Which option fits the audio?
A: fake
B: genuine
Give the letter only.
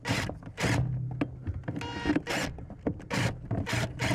B